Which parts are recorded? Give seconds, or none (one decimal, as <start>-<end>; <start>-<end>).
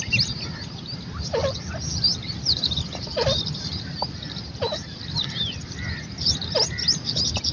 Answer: 0.0-1.4; 5.7-7.5